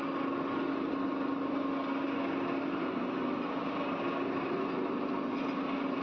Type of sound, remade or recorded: recorded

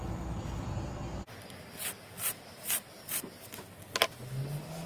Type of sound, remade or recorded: recorded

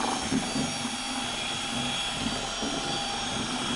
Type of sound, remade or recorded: recorded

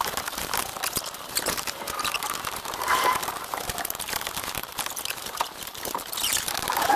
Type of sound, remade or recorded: remade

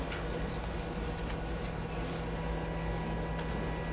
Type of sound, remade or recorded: recorded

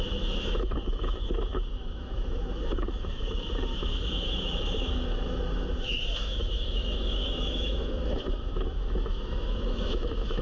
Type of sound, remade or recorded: remade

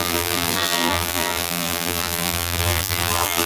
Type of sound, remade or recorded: remade